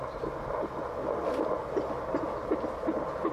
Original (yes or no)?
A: yes